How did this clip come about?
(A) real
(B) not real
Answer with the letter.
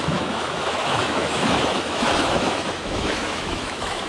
B